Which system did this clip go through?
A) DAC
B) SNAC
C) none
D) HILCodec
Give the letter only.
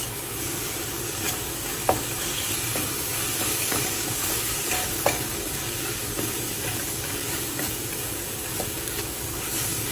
A